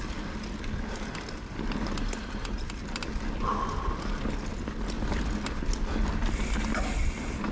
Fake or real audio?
real